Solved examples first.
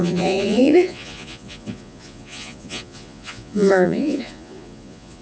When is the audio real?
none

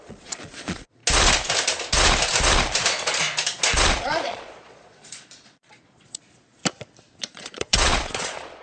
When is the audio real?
1.0-3.9; 6.6-7.2